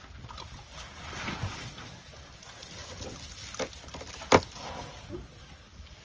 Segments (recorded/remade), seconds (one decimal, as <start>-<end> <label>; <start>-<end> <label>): 0.0-6.0 recorded

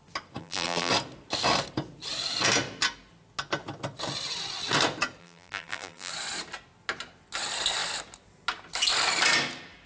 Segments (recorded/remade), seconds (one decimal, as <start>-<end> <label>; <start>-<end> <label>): 0.0-0.4 recorded; 0.4-0.9 remade; 0.9-5.2 recorded; 5.2-6.1 remade; 6.1-9.9 recorded

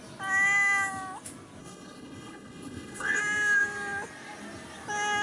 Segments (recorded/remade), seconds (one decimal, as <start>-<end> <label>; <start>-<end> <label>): 0.0-1.6 recorded; 1.6-3.2 remade; 3.2-5.2 recorded

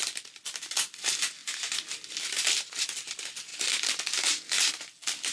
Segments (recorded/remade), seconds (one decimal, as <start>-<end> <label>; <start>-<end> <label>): 0.0-5.3 recorded

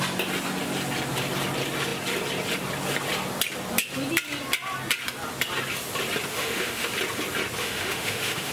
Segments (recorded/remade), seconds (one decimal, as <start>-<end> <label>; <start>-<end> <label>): 0.0-6.3 recorded; 6.3-6.9 remade; 6.9-7.6 recorded; 7.6-8.5 remade

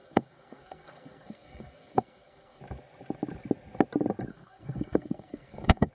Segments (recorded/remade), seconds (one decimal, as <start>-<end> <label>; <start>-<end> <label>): 0.0-2.6 remade; 2.6-4.3 recorded; 4.3-5.9 remade

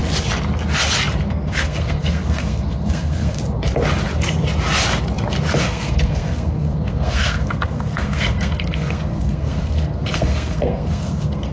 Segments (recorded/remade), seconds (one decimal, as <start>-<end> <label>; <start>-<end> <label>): 0.0-1.3 recorded; 1.3-3.4 remade; 3.4-5.6 recorded; 5.6-11.5 remade

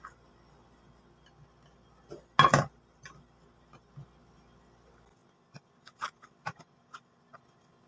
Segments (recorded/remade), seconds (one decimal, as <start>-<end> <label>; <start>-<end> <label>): 0.0-7.9 recorded